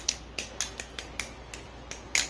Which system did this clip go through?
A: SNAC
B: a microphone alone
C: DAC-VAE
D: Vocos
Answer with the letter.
B